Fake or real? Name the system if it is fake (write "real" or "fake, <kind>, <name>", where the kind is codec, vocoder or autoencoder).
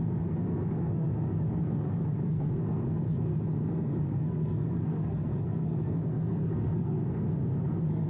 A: fake, codec, SNAC